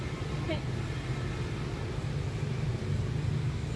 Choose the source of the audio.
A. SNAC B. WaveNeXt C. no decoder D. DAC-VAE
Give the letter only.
C